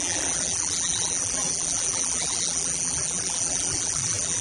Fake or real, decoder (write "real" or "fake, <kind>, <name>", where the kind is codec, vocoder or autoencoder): fake, vocoder, BigVGAN v2